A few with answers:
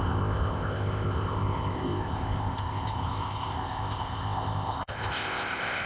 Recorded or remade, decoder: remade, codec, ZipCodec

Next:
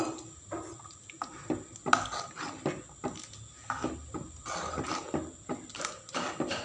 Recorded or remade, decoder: recorded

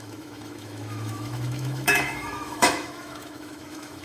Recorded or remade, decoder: remade, autoencoder, DAC-VAE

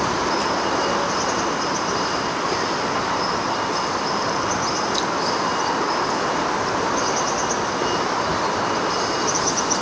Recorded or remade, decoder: recorded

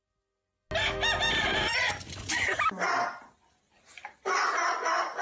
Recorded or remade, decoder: recorded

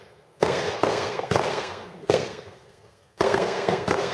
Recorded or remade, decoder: remade, codec, SNAC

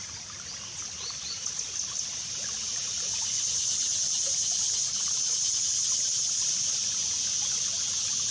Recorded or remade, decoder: recorded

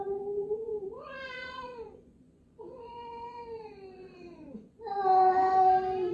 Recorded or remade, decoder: remade, vocoder, Vocos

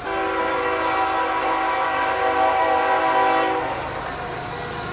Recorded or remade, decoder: recorded